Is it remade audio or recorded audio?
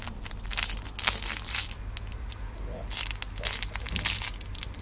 recorded